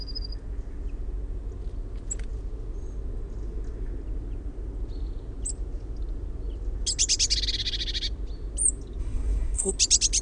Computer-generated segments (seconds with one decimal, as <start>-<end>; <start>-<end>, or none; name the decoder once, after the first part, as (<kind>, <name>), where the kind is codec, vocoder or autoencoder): 9.0-9.7 (codec, SNAC)